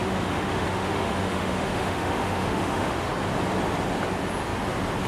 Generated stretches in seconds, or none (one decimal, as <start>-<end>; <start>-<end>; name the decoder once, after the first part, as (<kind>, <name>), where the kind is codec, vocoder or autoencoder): 0.0-3.1 (autoencoder, DAC-VAE)